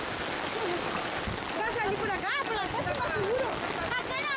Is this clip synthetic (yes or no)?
no